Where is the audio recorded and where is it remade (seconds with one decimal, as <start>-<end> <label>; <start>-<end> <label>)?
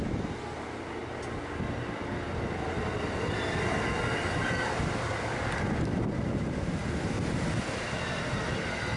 0.0-9.0 recorded